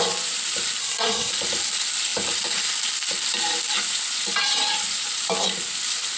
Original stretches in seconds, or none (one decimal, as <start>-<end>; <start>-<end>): 0.0-0.8; 1.3-6.2

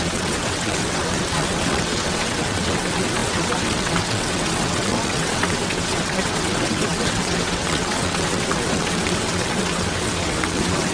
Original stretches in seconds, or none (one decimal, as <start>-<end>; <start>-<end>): none

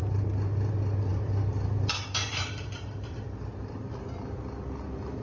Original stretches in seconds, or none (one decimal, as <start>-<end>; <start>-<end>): 0.0-1.1; 4.2-5.2

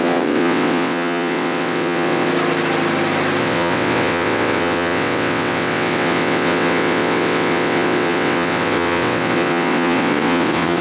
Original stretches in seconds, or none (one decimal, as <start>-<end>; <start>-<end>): 2.3-3.4

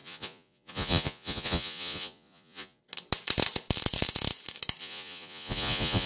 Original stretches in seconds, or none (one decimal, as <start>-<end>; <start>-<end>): 2.8-4.8

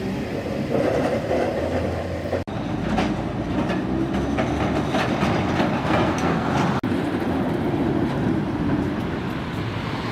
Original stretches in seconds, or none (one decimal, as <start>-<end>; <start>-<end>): 0.0-5.8; 6.5-10.1